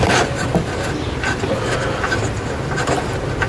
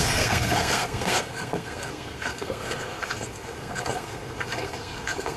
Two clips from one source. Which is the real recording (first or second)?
first